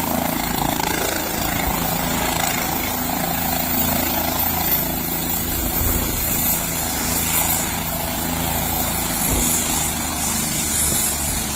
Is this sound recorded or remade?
recorded